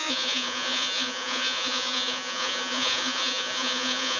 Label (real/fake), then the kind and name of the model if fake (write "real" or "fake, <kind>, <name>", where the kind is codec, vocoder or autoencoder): fake, vocoder, Vocos